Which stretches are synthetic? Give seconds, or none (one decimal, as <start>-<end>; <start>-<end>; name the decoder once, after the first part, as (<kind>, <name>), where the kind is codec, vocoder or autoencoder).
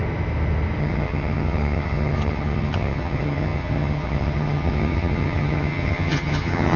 0.8-6.8 (vocoder, HiFi-GAN)